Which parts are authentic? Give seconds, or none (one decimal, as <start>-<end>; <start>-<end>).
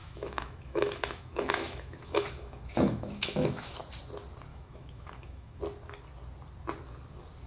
3.7-4.5; 5.6-7.5